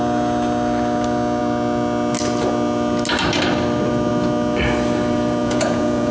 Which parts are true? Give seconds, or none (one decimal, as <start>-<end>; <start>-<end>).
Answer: 0.0-5.4